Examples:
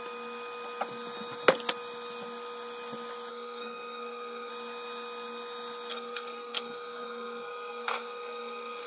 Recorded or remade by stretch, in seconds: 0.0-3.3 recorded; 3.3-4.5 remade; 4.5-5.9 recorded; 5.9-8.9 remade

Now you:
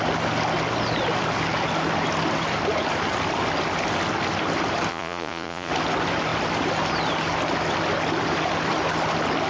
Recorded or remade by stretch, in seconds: 0.0-4.9 recorded; 4.9-5.7 remade; 5.7-9.5 recorded

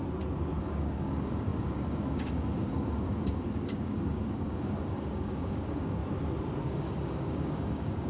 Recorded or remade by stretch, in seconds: 0.0-0.6 recorded; 0.6-6.0 remade; 6.0-6.6 recorded; 6.6-8.1 remade

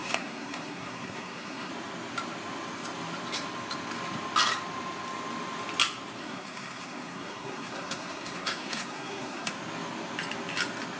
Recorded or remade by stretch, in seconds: 0.0-1.7 remade; 1.7-6.2 recorded; 6.2-9.5 remade; 9.5-11.0 recorded